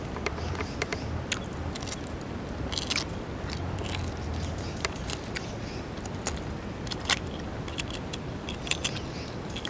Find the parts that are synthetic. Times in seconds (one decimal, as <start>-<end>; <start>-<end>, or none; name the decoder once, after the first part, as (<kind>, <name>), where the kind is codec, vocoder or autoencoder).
none